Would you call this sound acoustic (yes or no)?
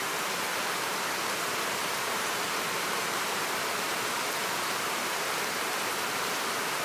no